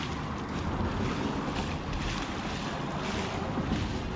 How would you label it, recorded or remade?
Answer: recorded